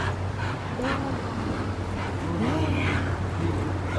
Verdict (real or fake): real